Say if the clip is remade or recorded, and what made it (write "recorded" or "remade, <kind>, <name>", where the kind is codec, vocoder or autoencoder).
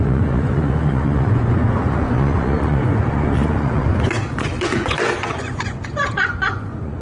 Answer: remade, vocoder, Vocos